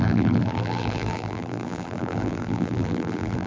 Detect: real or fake fake